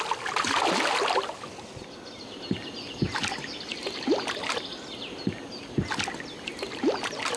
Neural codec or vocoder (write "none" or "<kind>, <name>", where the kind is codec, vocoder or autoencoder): none